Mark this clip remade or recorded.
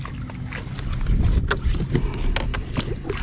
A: recorded